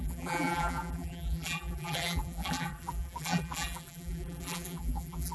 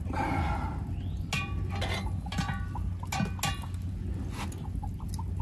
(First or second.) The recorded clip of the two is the second